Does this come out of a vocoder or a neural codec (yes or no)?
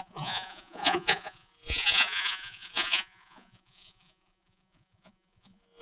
yes